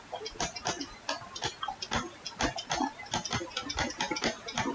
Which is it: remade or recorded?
recorded